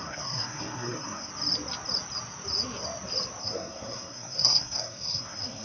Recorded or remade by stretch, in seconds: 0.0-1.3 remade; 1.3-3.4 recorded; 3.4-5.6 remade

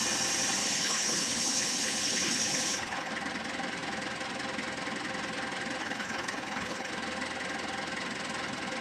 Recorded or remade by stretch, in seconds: 0.0-0.6 recorded; 0.6-3.1 remade; 3.1-5.8 recorded; 5.8-6.9 remade; 6.9-8.8 recorded

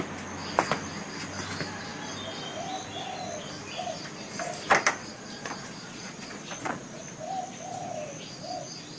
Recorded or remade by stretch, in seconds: 0.0-5.0 recorded; 5.0-7.0 remade; 7.0-9.0 recorded

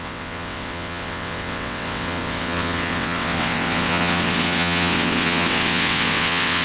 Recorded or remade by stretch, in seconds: 0.0-6.6 remade

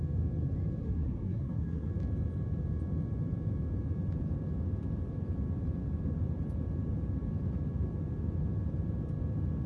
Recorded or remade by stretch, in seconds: 0.0-0.8 recorded; 0.8-1.9 remade; 1.9-9.7 recorded

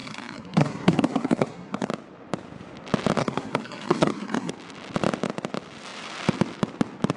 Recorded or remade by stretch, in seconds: 0.0-1.9 remade; 1.9-3.2 recorded; 3.2-4.5 remade; 4.5-7.2 recorded

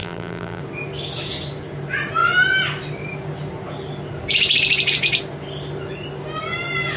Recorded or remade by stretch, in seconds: 0.0-0.6 remade; 0.6-7.0 recorded